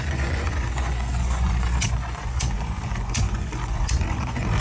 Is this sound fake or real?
fake